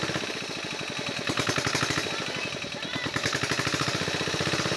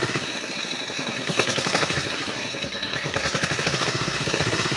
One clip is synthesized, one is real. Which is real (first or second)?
first